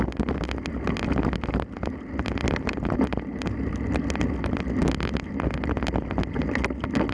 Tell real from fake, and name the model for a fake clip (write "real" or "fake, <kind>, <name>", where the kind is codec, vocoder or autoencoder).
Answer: real